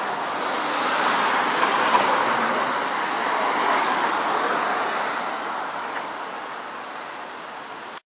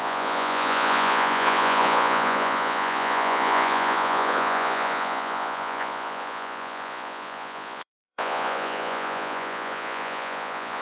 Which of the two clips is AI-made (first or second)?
second